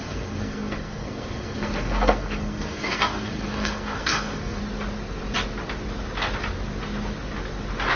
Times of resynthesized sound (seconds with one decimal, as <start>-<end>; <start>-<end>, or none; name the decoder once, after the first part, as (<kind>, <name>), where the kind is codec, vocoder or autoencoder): 0.0-4.6 (codec, SNAC)